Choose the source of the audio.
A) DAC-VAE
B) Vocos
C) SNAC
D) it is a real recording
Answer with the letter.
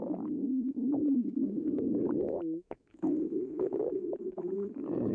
A